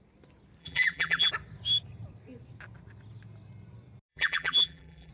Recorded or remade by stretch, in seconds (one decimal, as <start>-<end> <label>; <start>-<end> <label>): 0.0-0.6 recorded; 0.6-1.3 remade; 1.3-4.1 recorded; 4.1-5.1 remade